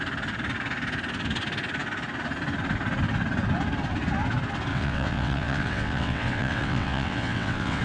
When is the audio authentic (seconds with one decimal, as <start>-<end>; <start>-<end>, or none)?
0.0-4.7